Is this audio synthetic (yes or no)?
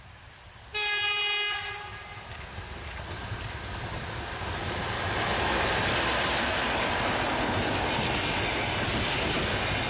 no